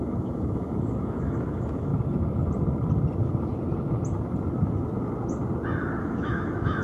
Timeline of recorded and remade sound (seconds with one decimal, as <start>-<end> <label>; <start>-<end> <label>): 0.0-1.9 remade; 1.9-6.0 recorded; 6.0-6.8 remade